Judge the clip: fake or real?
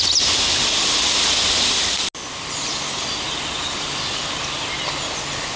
real